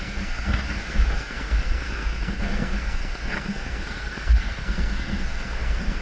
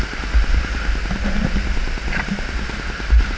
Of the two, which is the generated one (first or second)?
first